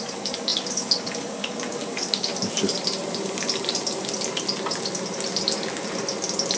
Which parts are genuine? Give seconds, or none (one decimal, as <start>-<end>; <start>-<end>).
2.3-6.6